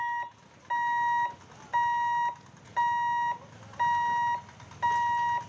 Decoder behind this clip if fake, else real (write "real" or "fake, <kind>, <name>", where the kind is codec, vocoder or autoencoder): real